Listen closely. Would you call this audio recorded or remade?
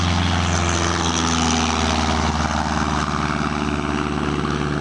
recorded